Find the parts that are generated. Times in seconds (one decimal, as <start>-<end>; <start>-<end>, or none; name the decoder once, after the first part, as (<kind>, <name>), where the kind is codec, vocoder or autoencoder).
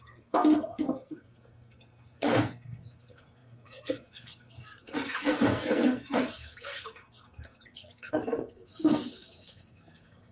0.0-10.3 (codec, SNAC)